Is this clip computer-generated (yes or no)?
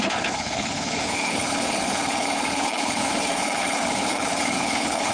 yes